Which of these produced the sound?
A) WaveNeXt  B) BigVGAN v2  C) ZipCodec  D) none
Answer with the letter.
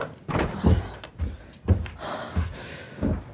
D